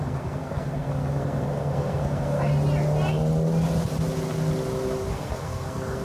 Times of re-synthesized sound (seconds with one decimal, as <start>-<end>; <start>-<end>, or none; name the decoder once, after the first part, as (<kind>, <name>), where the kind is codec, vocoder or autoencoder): 0.0-2.5 (codec, SNAC); 5.1-6.0